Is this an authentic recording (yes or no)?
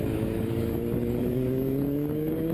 no